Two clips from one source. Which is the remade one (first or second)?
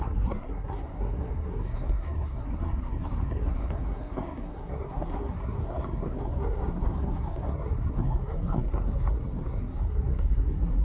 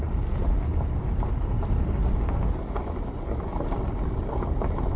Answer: first